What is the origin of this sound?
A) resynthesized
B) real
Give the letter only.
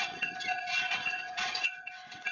A